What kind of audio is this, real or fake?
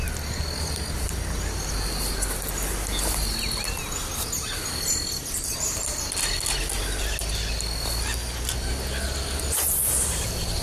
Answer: real